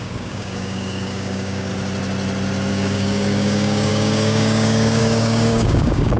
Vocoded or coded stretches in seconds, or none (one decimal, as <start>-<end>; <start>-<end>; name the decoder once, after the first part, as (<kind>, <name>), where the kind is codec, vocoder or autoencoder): 0.0-1.7 (codec, DAC); 2.7-6.2